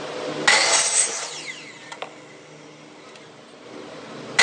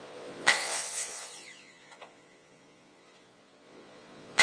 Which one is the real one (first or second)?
first